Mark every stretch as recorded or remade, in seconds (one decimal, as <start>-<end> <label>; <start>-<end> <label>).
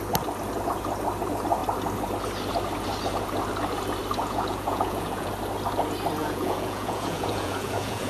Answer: 0.0-4.2 recorded; 4.2-5.3 remade; 5.3-6.2 recorded; 6.2-8.1 remade